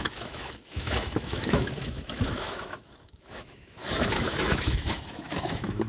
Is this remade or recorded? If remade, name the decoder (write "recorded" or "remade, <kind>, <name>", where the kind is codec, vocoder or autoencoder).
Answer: remade, autoencoder, DAC-VAE